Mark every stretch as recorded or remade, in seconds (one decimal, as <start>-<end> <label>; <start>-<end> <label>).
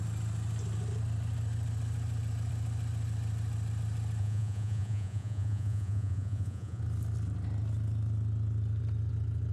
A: 0.0-4.2 recorded; 4.2-6.8 remade; 6.8-9.5 recorded